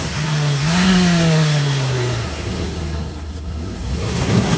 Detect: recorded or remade remade